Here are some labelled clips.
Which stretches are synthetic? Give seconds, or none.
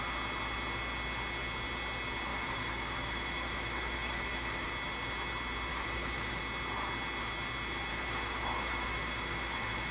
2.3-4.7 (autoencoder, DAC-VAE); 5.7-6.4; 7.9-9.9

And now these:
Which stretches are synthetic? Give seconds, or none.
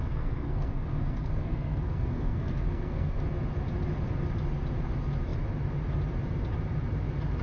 0.0-3.2 (codec, SNAC)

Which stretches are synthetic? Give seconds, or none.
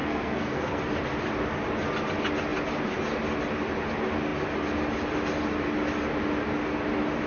0.0-0.8 (codec, SNAC)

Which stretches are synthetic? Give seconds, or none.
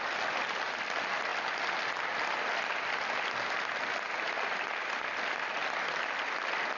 none